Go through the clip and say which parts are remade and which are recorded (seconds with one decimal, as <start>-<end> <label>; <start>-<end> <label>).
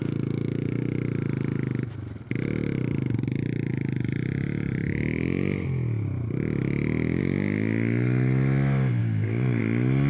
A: 0.0-9.0 recorded; 9.0-9.6 remade; 9.6-10.1 recorded